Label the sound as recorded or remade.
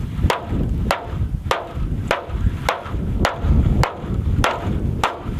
recorded